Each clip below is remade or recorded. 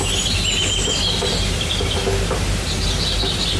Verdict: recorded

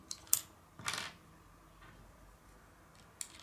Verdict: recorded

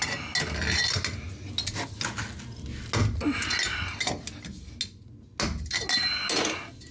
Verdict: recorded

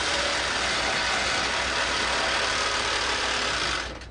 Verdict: recorded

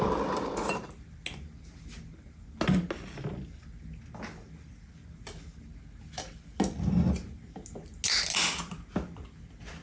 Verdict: recorded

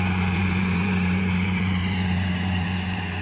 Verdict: remade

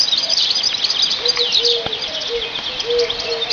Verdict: recorded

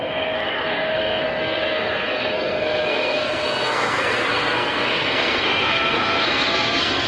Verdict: remade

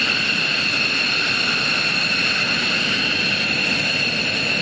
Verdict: recorded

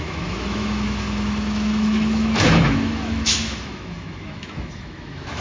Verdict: remade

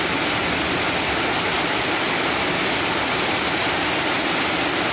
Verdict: recorded